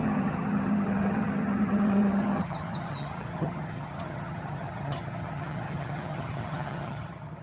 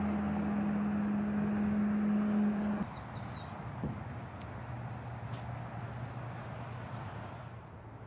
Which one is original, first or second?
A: second